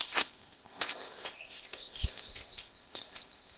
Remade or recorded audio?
remade